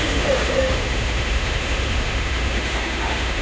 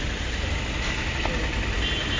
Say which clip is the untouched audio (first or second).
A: second